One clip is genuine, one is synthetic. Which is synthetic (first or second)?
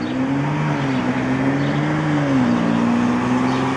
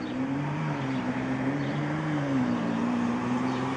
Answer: second